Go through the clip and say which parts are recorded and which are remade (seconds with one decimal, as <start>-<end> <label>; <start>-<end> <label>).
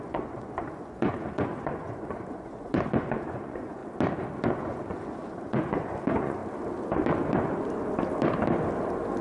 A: 0.0-3.8 remade; 3.8-4.5 recorded; 4.5-6.4 remade; 6.4-9.2 recorded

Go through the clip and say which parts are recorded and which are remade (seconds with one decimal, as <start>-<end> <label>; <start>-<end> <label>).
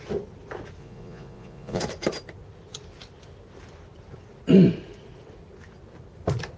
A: 0.0-0.8 recorded; 0.8-1.8 remade; 1.8-6.6 recorded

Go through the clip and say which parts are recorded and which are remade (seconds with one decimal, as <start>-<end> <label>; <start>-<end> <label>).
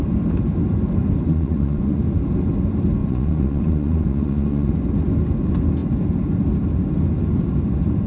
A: 0.0-1.3 recorded; 1.3-2.0 remade; 2.0-3.0 recorded; 3.0-4.7 remade; 4.7-8.1 recorded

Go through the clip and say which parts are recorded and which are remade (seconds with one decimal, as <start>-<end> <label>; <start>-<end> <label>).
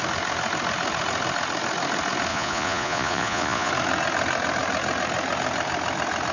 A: 0.0-2.3 recorded; 2.3-3.7 remade; 3.7-6.3 recorded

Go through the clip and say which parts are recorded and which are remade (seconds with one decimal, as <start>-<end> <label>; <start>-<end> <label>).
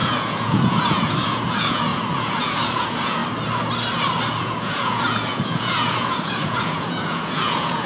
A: 0.0-3.2 remade; 3.2-4.3 recorded; 4.3-7.9 remade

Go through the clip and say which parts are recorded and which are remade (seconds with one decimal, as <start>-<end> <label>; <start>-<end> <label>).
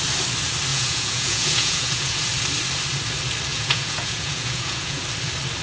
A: 0.0-0.7 recorded; 0.7-2.2 remade; 2.2-3.5 recorded; 3.5-5.0 remade; 5.0-5.6 recorded